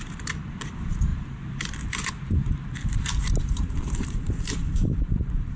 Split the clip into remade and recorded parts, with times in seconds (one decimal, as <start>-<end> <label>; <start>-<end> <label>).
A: 0.0-5.6 remade